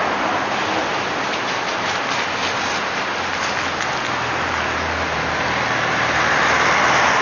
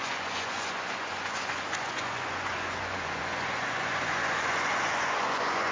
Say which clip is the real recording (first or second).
first